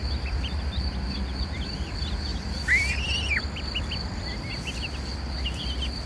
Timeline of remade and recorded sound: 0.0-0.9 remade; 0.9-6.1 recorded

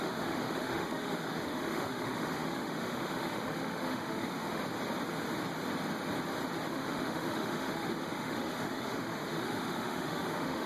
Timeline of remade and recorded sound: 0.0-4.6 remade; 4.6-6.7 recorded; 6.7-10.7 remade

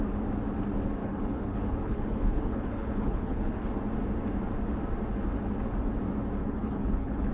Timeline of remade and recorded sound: 0.0-1.0 recorded; 1.0-3.7 remade; 3.7-6.4 recorded; 6.4-7.3 remade